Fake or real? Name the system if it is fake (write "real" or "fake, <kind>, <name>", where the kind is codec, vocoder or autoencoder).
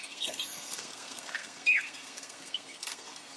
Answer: fake, codec, SNAC